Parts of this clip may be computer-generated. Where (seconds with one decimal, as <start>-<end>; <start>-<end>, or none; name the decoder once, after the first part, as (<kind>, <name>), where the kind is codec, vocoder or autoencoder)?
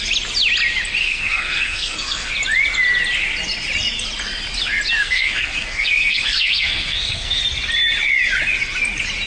1.0-2.3 (codec, SNAC); 5.0-7.4